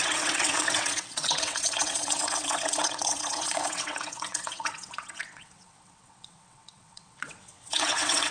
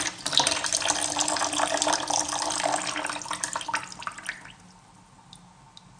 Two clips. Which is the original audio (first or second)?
second